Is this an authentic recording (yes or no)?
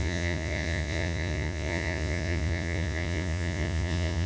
no